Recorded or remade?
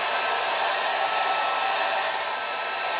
recorded